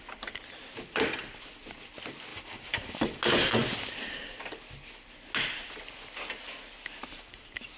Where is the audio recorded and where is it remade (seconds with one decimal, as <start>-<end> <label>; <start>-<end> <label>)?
0.0-2.3 recorded; 2.3-3.2 remade; 3.2-7.0 recorded; 7.0-7.8 remade